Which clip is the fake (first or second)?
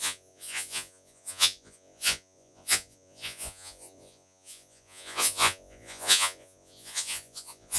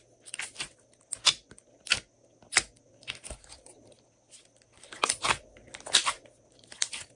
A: first